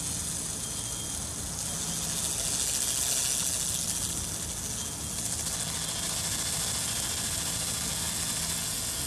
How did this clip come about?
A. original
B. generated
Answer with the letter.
A